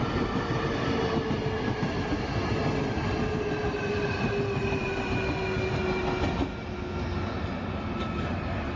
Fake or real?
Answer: real